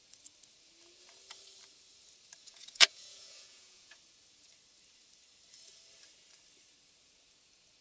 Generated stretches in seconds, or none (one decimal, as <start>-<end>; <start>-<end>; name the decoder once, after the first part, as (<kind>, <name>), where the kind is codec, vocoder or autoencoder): 2.4-4.0 (vocoder, Vocos)